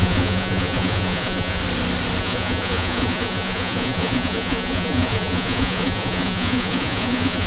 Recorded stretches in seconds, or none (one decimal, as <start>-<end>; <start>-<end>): 1.6-2.2